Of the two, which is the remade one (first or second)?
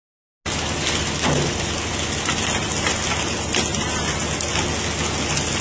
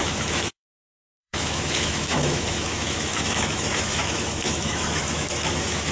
second